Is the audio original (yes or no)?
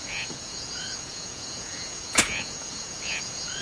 no